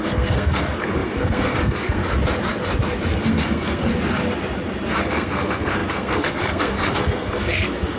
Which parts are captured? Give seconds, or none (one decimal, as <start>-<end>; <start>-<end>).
2.0-3.2; 3.9-4.9